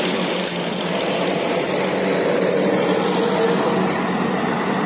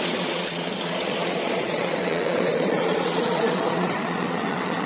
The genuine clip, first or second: first